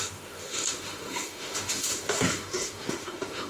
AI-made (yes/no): yes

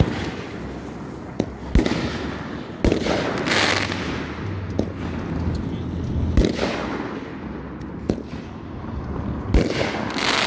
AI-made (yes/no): no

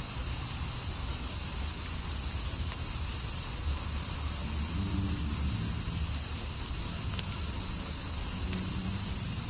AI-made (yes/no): no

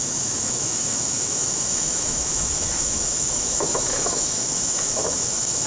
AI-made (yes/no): yes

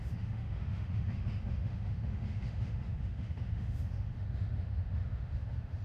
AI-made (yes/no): yes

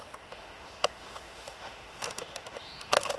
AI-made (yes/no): yes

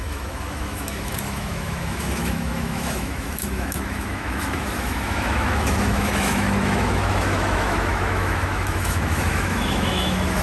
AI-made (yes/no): yes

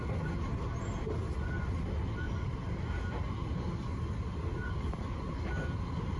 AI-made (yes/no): no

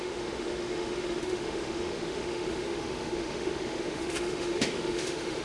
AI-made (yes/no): yes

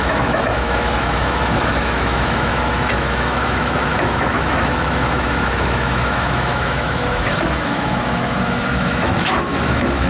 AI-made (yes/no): yes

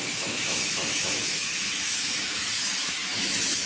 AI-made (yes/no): yes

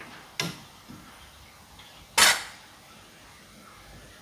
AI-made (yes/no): no